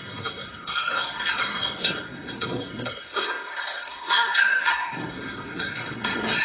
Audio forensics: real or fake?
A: fake